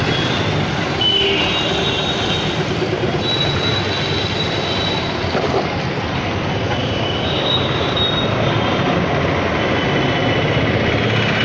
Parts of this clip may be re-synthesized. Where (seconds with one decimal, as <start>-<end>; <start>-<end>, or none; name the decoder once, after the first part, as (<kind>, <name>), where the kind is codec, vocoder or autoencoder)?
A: 6.8-8.0 (codec, DAC)